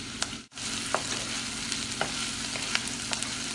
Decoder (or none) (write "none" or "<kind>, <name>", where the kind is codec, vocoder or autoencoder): none